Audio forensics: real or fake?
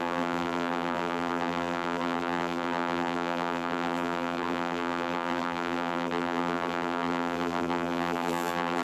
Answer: fake